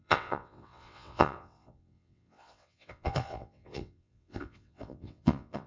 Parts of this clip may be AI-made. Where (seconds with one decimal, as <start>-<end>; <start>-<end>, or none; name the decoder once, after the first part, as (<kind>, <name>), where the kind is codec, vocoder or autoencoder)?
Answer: 0.0-5.7 (vocoder, WaveNeXt)